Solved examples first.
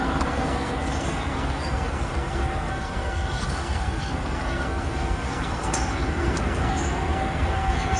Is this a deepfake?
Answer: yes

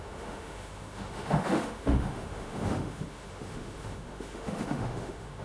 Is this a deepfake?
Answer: yes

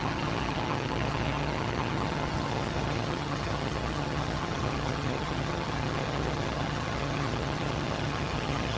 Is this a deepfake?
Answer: yes